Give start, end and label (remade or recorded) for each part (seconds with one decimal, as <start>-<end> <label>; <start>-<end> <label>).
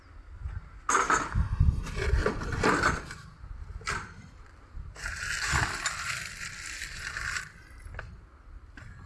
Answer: 0.0-2.2 recorded; 2.2-3.0 remade; 3.0-5.0 recorded; 5.0-7.8 remade; 7.8-9.1 recorded